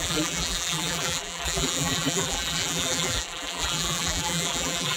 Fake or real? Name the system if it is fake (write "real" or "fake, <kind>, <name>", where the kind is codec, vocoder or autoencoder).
fake, vocoder, BigVGAN v2